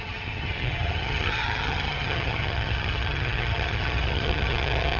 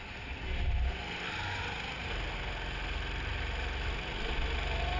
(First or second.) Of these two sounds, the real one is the second